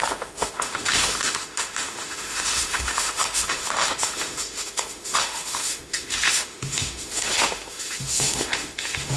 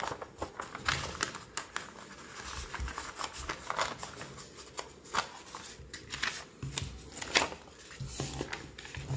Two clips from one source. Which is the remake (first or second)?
first